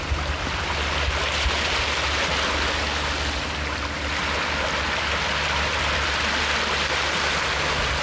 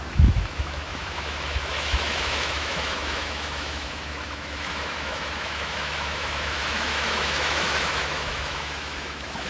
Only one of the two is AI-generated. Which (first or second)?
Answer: second